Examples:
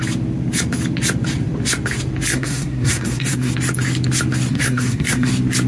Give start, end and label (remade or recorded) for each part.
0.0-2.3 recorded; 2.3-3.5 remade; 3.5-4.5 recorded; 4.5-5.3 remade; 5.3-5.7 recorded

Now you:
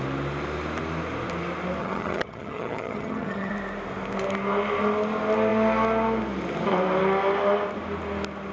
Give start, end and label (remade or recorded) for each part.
0.0-1.8 recorded; 1.8-3.5 remade; 3.5-8.5 recorded